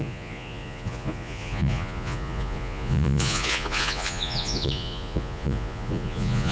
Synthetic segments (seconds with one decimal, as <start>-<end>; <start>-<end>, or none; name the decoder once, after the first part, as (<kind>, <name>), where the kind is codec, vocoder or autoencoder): 0.0-6.5 (vocoder, Vocos)